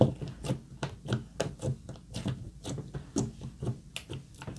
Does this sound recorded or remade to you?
recorded